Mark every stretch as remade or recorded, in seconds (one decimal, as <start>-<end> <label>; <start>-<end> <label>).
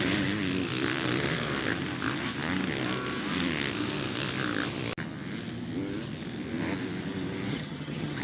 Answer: 0.0-7.5 recorded; 7.5-8.2 remade